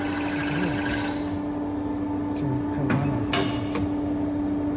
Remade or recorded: recorded